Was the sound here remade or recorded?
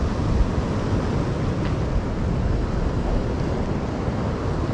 recorded